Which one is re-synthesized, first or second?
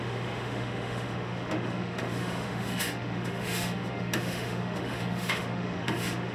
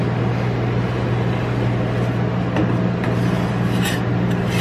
first